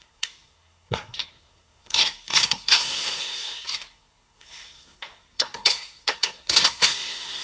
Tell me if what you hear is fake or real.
fake